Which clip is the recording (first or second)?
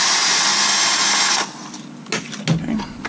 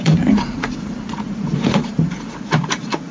first